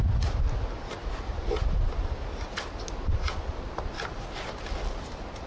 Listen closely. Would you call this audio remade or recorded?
recorded